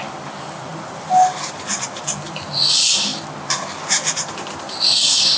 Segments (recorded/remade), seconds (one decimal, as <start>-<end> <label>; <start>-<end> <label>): 0.0-5.4 recorded